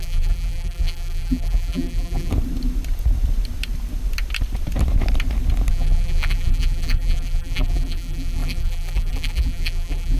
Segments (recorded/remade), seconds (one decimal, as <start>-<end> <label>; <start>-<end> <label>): 0.0-2.3 remade; 2.3-5.7 recorded; 5.7-10.2 remade